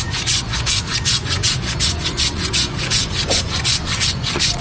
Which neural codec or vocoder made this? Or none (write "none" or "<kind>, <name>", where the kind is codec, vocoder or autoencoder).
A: vocoder, Vocos